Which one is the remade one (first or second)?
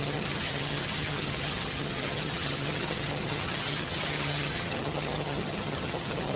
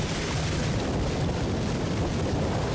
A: first